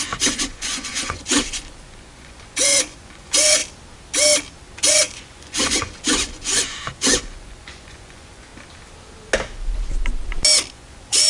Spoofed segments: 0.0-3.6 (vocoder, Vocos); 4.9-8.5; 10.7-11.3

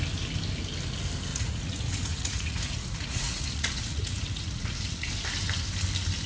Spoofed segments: 1.3-5.1 (vocoder, Vocos)

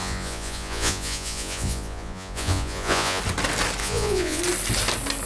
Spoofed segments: 0.0-3.2 (vocoder, Vocos); 3.8-4.4

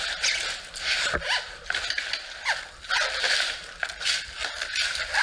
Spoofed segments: none

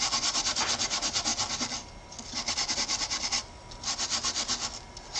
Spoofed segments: none

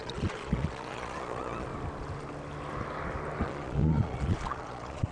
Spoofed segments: 0.0-1.7 (vocoder, Vocos); 3.4-5.1

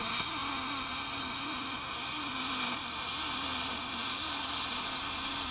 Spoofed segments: none